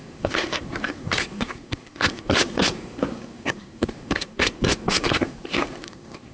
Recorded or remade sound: remade